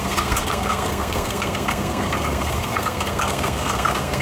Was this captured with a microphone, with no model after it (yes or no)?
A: no